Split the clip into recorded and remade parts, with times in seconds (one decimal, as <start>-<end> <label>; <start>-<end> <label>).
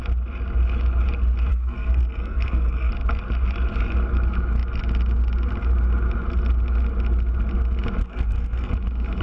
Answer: 0.0-1.5 recorded; 1.5-2.9 remade; 2.9-8.0 recorded; 8.0-8.7 remade; 8.7-9.2 recorded